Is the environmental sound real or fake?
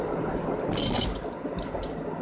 real